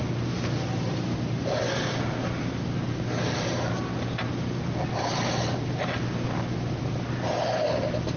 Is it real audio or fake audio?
real